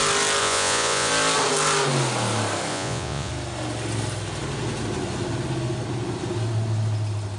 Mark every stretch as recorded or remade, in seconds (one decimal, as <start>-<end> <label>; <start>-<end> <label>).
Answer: 0.0-0.4 recorded; 0.4-1.1 remade; 1.1-2.7 recorded; 2.7-3.3 remade; 3.3-7.4 recorded